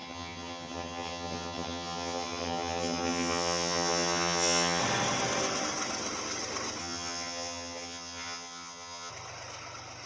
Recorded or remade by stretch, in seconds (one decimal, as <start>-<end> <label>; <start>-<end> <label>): 0.0-4.8 remade; 4.8-6.8 recorded; 6.8-9.1 remade; 9.1-10.1 recorded